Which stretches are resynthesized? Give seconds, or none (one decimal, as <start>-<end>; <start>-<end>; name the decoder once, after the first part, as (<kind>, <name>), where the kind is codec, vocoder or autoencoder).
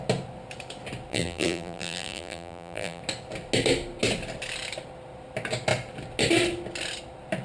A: 1.1-3.0 (vocoder, BigVGAN v2)